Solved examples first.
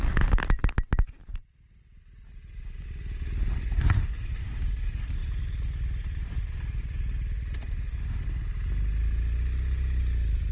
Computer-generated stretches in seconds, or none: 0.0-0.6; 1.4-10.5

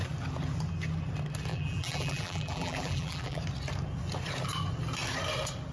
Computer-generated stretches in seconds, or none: 1.5-3.4

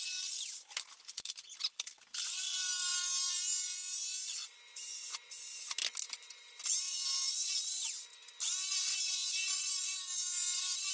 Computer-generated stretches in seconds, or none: 5.8-7.6